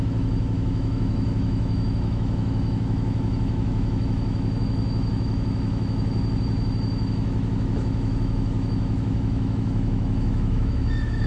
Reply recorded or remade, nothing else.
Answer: remade